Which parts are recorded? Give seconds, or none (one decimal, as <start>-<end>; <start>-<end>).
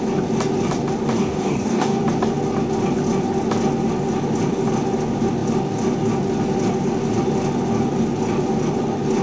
0.0-1.1; 2.0-9.2